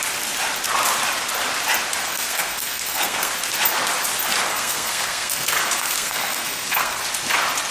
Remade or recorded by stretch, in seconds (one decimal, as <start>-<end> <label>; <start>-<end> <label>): 0.0-2.0 recorded; 2.0-3.3 remade; 3.3-4.5 recorded; 4.5-7.0 remade; 7.0-7.7 recorded